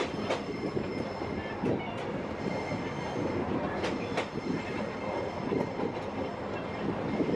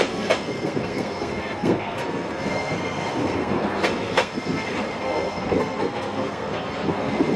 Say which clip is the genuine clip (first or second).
first